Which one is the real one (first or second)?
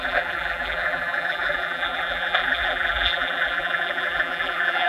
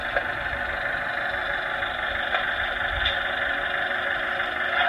second